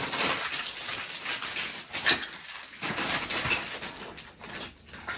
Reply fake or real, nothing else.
real